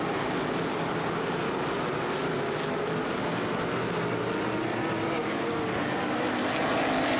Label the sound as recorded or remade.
recorded